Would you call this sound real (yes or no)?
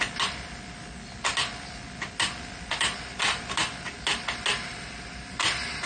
yes